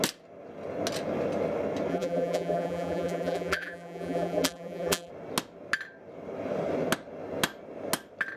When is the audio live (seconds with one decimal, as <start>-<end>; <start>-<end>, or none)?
0.0-1.9; 5.1-8.4